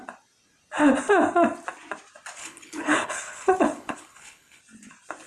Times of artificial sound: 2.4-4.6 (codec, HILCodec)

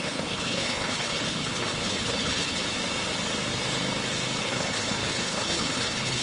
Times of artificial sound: 0.0-2.6 (codec, HILCodec); 4.4-6.2

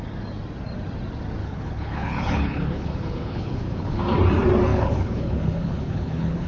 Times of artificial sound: 1.4-4.0 (codec, HILCodec); 4.7-6.5